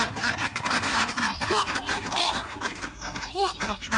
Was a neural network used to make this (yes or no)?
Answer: yes